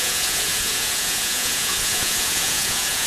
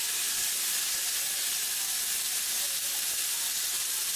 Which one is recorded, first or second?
second